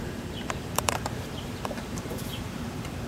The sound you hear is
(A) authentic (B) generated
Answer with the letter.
B